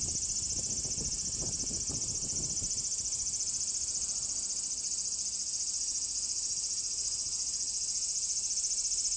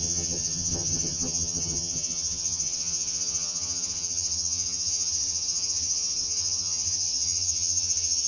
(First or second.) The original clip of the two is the first